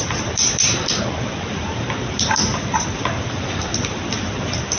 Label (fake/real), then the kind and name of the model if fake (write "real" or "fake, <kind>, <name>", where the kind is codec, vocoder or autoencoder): fake, vocoder, BigVGAN v2